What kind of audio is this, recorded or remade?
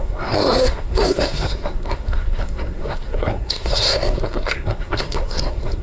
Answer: remade